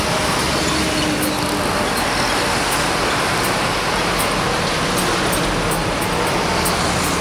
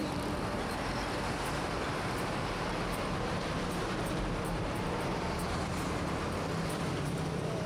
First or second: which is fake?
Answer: second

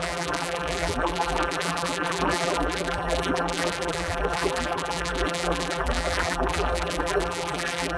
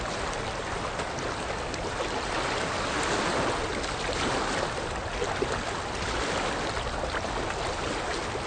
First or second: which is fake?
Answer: first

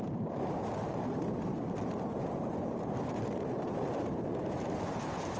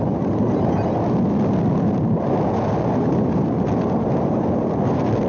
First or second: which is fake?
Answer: first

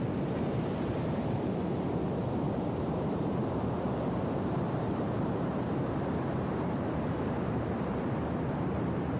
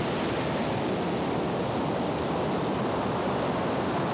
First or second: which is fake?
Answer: first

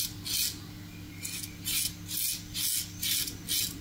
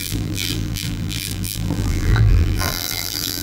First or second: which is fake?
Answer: second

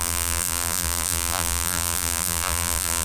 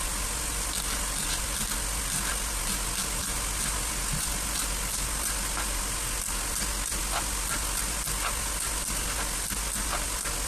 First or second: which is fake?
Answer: first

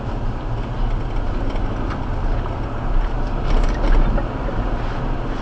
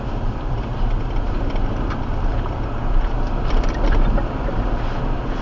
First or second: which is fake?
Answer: second